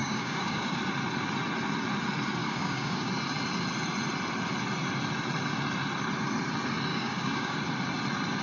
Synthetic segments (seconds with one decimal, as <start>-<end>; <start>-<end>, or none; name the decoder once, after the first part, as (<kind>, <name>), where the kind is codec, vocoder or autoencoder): 0.0-0.8 (codec, DAC); 2.4-3.1; 6.9-7.6